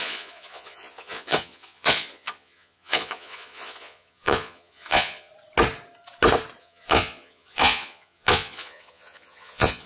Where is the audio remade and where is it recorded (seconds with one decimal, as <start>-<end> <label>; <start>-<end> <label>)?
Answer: 0.0-5.3 remade; 5.3-6.6 recorded; 6.6-9.9 remade